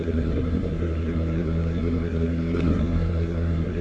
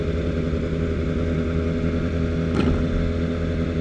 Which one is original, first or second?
second